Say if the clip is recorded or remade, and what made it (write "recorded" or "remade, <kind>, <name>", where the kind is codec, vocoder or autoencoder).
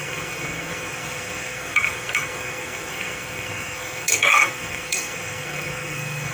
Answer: remade, codec, SNAC